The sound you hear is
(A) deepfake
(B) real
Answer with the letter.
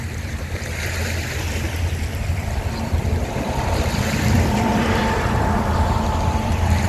A